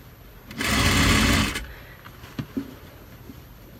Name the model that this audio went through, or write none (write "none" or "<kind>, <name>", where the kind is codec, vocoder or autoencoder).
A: none